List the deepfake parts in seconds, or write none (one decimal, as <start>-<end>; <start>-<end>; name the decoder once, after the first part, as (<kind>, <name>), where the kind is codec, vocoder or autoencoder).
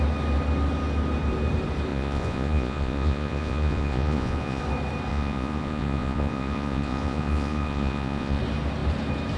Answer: 1.9-4.6 (vocoder, Vocos); 5.1-8.4